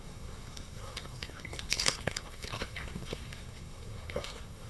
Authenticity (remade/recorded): remade